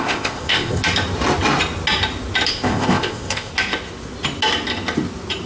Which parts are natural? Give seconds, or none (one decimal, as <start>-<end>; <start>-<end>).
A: 0.8-2.5; 3.5-5.5